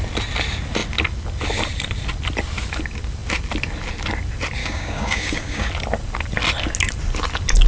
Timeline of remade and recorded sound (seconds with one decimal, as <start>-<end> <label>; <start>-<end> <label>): 0.0-4.6 recorded; 4.6-5.7 remade; 5.7-7.7 recorded